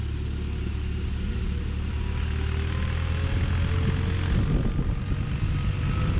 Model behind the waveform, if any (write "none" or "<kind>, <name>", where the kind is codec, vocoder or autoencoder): none